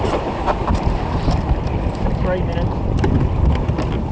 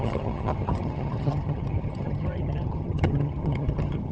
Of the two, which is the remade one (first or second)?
second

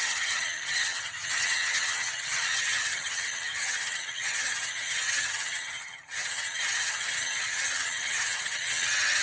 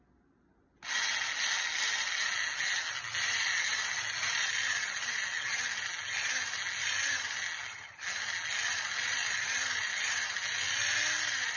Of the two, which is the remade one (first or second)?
first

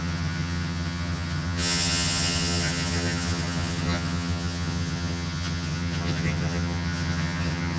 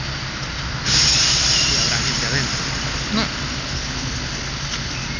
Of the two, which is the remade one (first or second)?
first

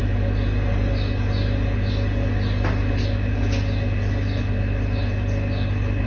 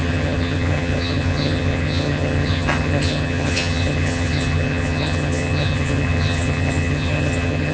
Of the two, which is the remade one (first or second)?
second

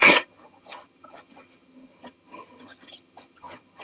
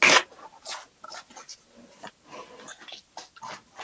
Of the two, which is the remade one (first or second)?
first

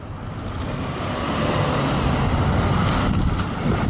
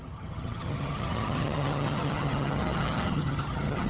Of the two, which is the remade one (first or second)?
second